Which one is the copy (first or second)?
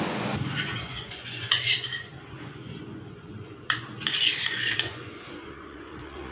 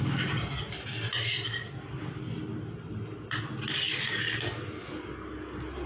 first